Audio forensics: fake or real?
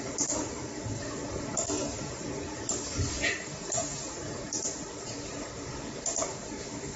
real